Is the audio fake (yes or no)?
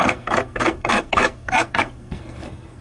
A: yes